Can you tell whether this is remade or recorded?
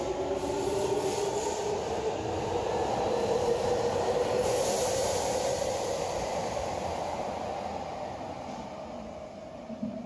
recorded